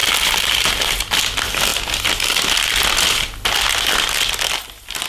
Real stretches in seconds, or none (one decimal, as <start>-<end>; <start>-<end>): 0.0-5.1